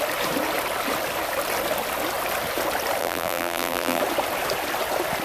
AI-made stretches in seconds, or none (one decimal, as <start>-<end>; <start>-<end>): 3.0-4.0